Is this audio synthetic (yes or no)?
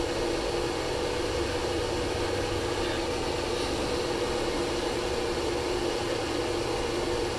no